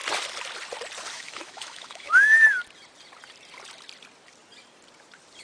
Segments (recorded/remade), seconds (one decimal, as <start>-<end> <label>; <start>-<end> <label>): 0.0-1.1 recorded; 1.1-2.3 remade; 2.3-5.4 recorded